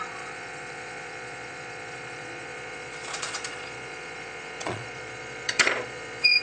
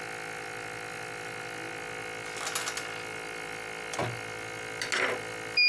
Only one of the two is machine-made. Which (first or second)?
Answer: first